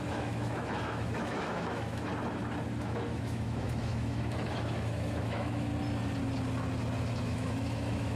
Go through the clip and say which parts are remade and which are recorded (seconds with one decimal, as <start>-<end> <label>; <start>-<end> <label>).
0.0-2.1 remade; 2.1-2.8 recorded; 2.8-5.7 remade; 5.7-7.2 recorded; 7.2-8.2 remade